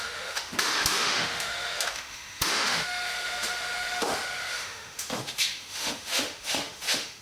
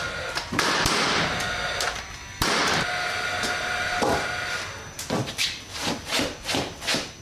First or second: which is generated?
first